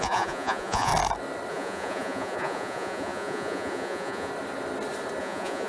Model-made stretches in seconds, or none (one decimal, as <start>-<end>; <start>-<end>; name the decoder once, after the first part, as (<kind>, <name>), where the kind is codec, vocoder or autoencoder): 0.0-0.9 (vocoder, Vocos); 1.5-4.3; 5.2-5.7